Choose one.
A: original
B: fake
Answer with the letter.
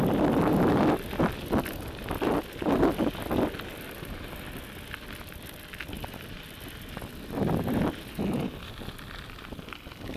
A